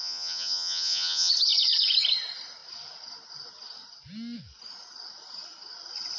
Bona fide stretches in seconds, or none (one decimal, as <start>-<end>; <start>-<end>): 1.3-6.2